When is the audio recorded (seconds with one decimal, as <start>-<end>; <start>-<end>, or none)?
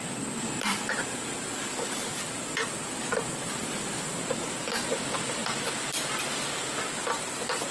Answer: 5.4-6.9